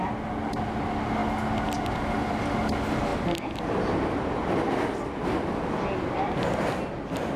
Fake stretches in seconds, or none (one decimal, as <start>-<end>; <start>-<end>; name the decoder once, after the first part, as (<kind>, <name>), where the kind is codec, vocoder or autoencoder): none